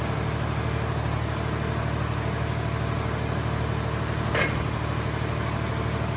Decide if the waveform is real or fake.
real